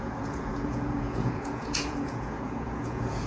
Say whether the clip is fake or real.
fake